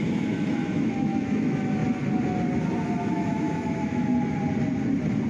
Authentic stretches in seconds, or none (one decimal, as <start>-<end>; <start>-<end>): 1.8-3.1; 4.1-5.3